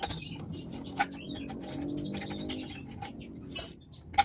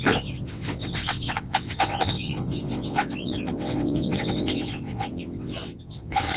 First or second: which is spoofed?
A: second